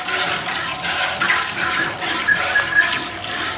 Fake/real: real